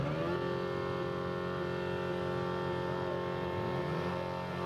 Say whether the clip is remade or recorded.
recorded